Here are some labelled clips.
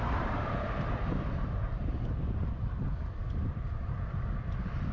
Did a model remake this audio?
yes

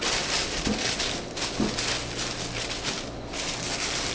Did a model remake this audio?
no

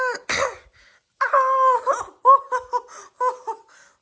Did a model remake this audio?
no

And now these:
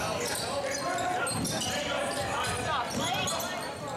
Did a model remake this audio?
no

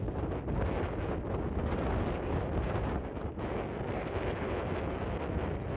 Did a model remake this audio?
no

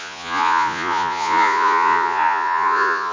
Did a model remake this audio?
yes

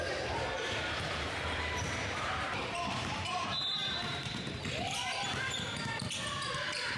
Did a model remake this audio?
yes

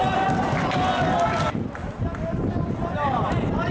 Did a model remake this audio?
no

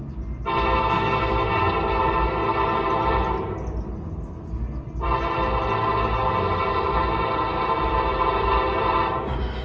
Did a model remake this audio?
no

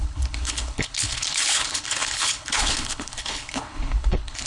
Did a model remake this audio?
yes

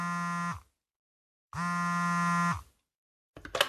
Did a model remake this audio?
no